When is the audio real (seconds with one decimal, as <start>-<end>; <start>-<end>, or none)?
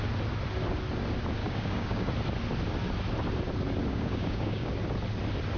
0.0-1.4; 2.1-3.9; 4.7-5.6